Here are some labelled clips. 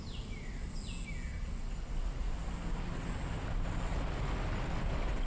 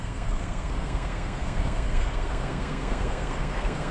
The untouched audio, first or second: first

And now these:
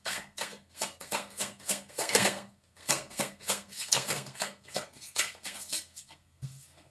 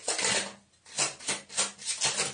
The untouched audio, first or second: second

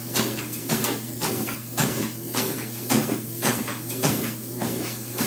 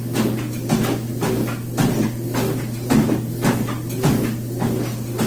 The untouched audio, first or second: second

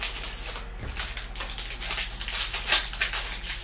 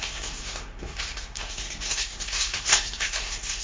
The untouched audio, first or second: first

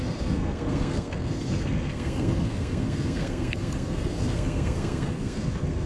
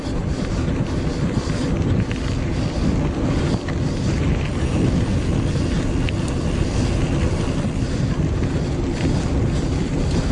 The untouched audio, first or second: second